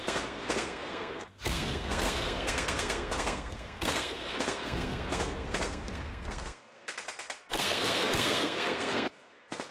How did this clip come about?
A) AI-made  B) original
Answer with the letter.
A